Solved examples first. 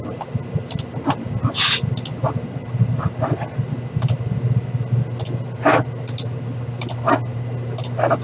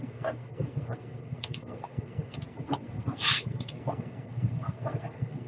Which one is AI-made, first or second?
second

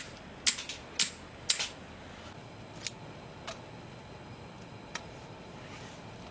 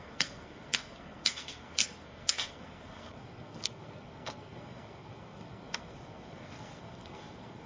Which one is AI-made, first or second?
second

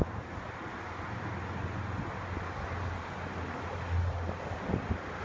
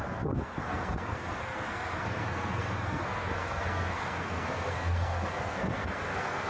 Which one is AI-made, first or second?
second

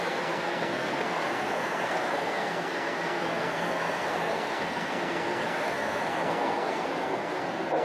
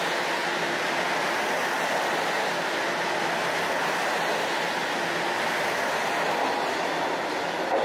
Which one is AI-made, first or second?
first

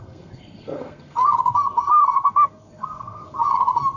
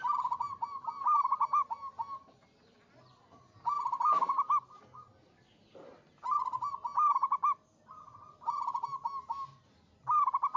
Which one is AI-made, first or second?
first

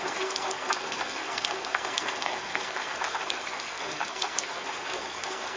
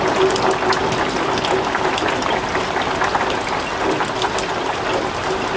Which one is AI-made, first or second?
first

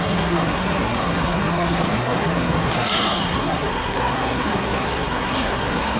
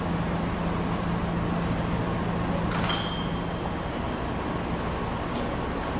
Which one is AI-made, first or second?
first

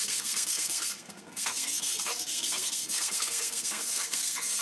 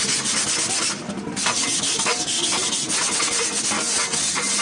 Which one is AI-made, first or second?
first